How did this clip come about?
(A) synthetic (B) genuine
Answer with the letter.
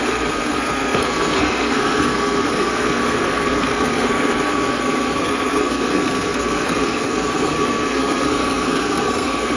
A